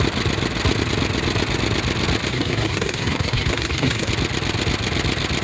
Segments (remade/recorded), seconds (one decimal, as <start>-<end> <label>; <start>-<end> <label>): 0.0-2.3 recorded; 2.3-4.1 remade; 4.1-5.4 recorded